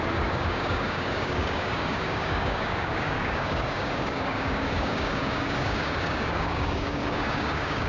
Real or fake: fake